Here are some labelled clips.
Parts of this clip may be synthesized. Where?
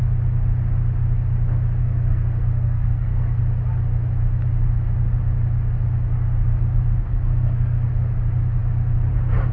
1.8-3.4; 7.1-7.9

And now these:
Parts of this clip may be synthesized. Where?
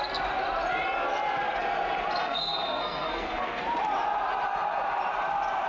2.2-3.6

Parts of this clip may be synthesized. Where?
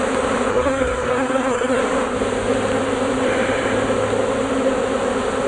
0.5-1.8